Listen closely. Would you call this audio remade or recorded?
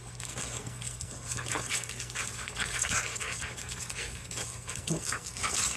remade